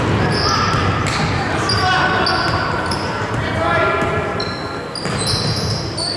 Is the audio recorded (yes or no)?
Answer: yes